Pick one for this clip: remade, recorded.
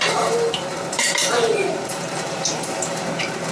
remade